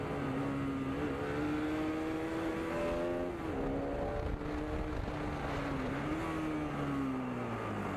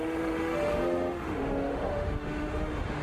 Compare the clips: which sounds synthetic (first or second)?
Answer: second